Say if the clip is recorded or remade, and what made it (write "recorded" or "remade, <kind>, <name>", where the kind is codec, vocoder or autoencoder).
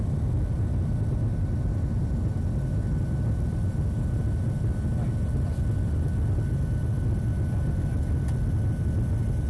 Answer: recorded